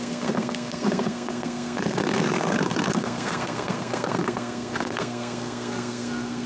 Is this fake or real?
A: fake